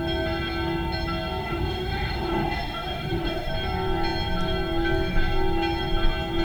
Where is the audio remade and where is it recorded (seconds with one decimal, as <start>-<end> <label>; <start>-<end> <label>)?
0.0-1.4 recorded; 1.4-3.5 remade; 3.5-6.4 recorded